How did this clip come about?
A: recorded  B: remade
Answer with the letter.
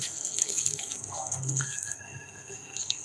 B